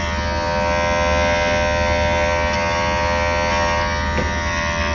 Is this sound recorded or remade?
recorded